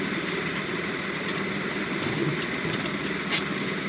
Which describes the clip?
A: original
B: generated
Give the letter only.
A